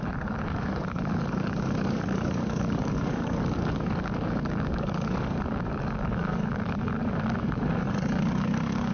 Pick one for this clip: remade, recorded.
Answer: remade